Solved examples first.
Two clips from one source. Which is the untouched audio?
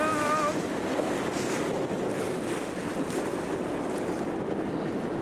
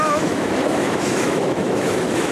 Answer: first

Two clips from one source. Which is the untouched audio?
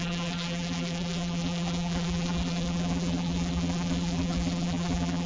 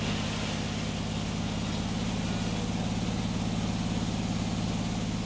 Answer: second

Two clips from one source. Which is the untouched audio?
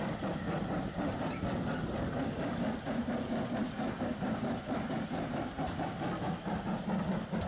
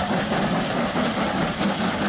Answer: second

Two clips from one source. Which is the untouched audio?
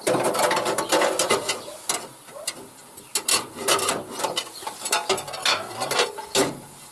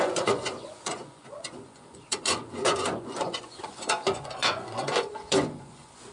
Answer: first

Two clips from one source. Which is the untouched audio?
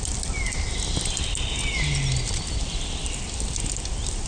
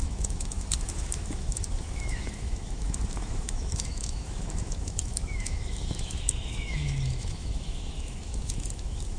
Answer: first